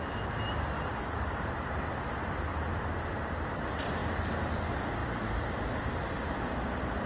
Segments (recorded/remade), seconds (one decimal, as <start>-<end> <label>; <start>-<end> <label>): 0.0-2.1 remade; 2.1-2.5 recorded; 2.5-3.3 remade; 3.3-5.0 recorded; 5.0-6.4 remade; 6.4-7.1 recorded